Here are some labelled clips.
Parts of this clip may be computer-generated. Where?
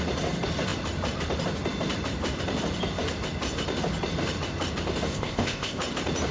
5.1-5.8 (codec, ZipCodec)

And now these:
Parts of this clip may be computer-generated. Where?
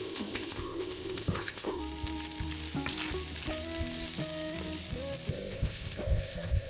0.0-1.8 (codec, ZipCodec); 5.3-6.7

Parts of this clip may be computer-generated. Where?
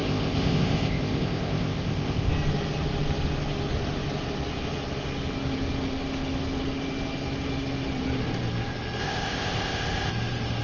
0.0-2.3 (codec, ZipCodec); 9.0-10.1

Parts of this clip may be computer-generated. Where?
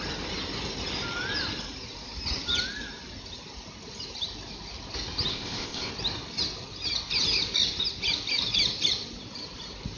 5.3-5.9 (codec, ZipCodec)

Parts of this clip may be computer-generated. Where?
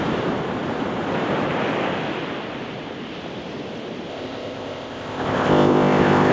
4.1-6.3 (codec, ZipCodec)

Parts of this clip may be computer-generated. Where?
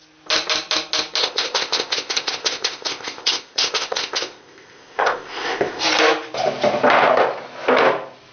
1.2-5.8 (codec, ZipCodec)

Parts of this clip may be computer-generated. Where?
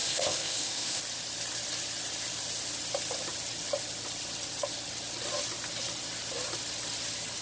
0.0-1.0 (codec, ZipCodec)